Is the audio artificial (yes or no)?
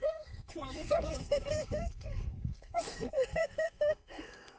yes